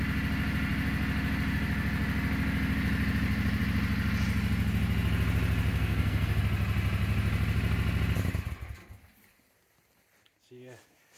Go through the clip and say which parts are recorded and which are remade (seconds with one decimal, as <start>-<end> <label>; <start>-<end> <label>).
0.0-5.7 recorded; 5.7-6.4 remade; 6.4-11.2 recorded

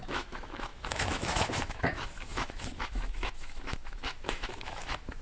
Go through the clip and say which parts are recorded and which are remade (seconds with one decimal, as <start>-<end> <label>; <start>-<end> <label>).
0.0-5.2 remade

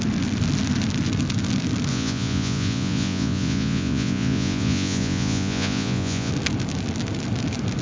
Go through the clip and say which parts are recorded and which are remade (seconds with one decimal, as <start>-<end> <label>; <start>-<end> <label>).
0.0-1.9 recorded; 1.9-6.3 remade; 6.3-7.8 recorded

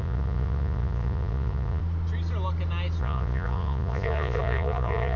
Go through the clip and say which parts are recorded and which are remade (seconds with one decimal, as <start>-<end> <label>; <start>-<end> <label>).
0.0-1.8 remade; 1.8-3.0 recorded; 3.0-5.2 remade

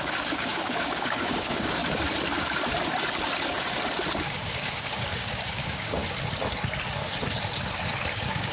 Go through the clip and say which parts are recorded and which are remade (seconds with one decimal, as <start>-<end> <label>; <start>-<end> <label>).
0.0-1.8 remade; 1.8-4.2 recorded; 4.2-6.0 remade; 6.0-8.1 recorded; 8.1-8.5 remade

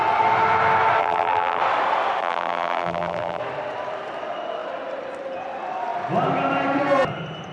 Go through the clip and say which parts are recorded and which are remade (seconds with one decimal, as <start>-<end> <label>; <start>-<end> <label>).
0.0-1.0 recorded; 1.0-1.6 remade; 1.6-2.2 recorded; 2.2-3.4 remade; 3.4-7.5 recorded